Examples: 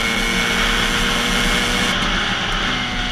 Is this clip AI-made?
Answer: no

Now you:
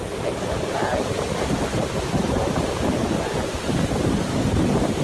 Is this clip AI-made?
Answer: no